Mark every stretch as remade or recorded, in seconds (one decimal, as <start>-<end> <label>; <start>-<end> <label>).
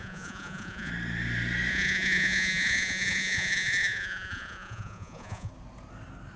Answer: 0.0-0.9 remade; 0.9-1.7 recorded; 1.7-5.5 remade; 5.5-6.4 recorded